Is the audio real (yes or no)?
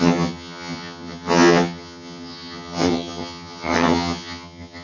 no